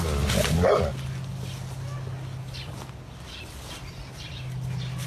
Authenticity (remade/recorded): recorded